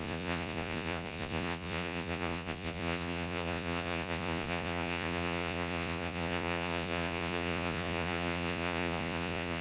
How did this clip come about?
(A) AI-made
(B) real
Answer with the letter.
A